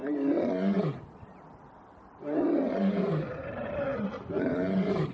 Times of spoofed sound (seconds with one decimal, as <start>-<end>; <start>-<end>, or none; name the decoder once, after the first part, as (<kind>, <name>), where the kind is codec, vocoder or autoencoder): 0.0-3.9 (vocoder, BigVGAN v2); 4.4-5.1